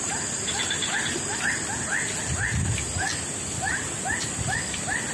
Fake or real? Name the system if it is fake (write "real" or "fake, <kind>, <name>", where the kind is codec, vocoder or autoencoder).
real